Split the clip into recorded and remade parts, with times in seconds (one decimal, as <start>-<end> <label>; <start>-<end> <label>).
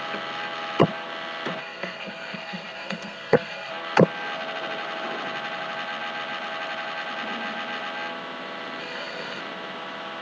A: 0.0-1.6 recorded; 1.6-3.7 remade; 3.7-8.8 recorded; 8.8-9.4 remade; 9.4-10.2 recorded